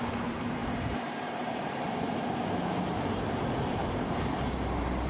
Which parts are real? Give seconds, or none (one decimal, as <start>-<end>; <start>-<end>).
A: 0.0-0.6; 3.1-3.8